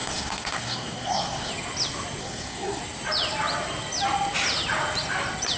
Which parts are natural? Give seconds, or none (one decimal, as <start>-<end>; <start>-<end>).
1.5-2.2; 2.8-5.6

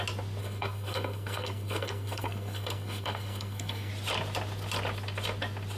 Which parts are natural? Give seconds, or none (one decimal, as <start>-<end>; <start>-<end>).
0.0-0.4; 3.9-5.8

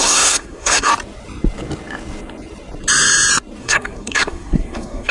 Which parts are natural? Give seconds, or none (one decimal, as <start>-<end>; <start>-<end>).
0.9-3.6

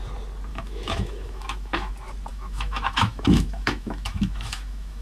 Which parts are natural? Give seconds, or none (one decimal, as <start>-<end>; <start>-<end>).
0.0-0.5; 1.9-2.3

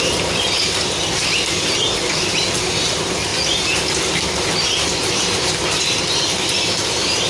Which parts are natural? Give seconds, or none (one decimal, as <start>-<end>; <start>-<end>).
0.0-7.3

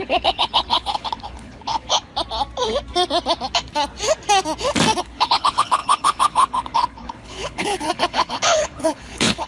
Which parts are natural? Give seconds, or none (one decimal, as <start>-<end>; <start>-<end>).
2.1-5.0